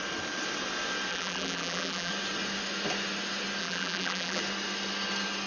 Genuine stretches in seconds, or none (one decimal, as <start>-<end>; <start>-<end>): 0.0-1.1; 2.1-3.6; 4.4-5.5

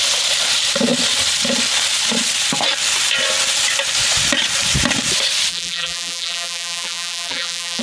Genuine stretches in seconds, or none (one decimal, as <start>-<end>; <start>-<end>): 0.0-5.5

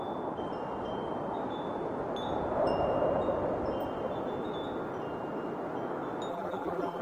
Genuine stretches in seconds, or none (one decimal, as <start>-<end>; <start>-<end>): 0.0-6.3

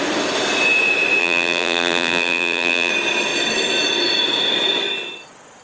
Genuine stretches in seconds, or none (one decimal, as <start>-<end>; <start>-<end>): 0.0-1.2; 2.9-5.6

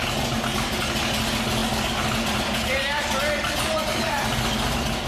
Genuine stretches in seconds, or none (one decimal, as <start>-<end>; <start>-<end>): 0.0-5.1